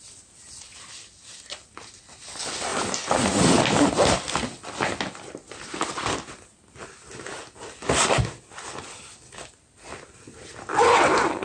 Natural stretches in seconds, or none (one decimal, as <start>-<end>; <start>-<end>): 0.0-11.4